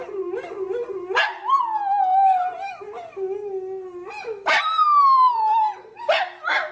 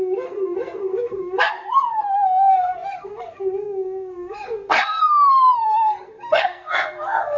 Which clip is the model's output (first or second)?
second